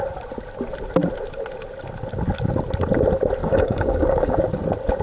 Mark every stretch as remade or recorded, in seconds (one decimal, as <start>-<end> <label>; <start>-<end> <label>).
0.0-3.4 recorded; 3.4-4.4 remade; 4.4-5.0 recorded